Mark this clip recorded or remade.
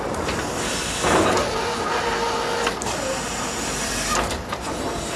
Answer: recorded